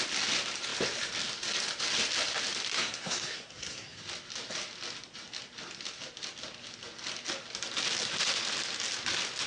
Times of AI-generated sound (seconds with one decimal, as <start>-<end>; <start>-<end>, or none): 2.7-4.0